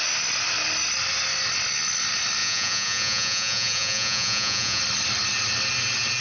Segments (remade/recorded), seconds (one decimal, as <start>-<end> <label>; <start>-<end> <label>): 0.0-2.4 recorded; 2.4-4.8 remade; 4.8-6.2 recorded